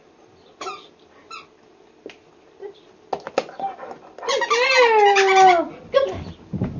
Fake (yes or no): no